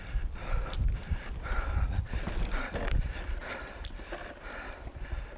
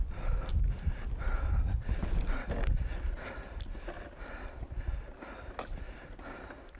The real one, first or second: second